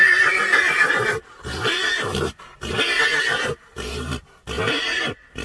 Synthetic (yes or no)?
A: no